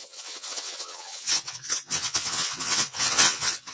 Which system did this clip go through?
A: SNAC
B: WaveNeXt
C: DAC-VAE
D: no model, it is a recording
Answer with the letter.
B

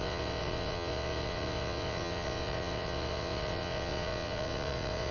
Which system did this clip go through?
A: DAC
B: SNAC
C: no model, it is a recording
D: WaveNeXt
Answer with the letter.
D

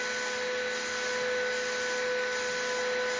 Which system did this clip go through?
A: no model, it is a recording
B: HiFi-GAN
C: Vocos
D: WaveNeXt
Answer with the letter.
A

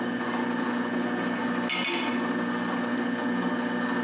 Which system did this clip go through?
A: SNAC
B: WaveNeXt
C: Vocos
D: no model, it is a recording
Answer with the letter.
D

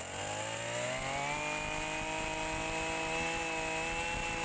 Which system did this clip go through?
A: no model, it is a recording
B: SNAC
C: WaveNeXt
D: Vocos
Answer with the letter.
A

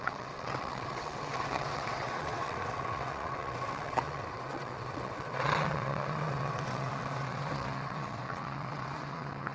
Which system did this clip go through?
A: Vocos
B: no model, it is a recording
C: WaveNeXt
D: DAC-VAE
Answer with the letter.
C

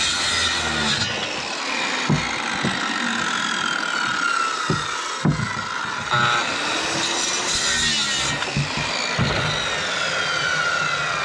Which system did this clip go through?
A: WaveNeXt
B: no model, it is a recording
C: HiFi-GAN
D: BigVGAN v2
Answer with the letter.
B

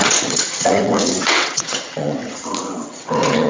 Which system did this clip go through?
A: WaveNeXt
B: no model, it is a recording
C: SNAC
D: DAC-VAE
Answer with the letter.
A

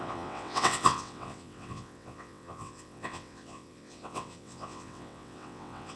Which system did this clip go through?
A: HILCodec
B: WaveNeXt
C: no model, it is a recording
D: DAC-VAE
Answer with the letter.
B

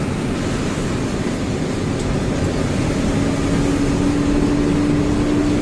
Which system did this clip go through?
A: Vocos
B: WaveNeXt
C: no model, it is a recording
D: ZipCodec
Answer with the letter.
C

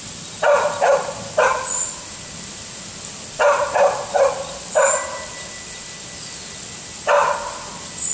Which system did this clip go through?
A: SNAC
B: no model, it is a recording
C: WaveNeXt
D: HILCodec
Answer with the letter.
B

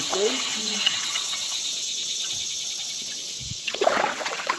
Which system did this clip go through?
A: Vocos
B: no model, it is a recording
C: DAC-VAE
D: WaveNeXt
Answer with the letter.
D